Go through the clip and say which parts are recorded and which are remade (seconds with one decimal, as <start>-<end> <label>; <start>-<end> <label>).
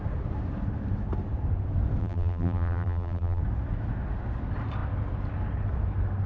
0.0-2.0 recorded; 2.0-3.4 remade; 3.4-6.3 recorded